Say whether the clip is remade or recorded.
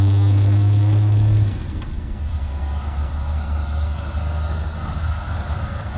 remade